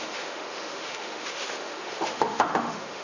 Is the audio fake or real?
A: fake